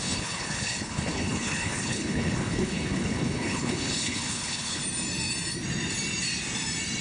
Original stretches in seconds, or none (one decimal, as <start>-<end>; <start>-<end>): 4.8-7.0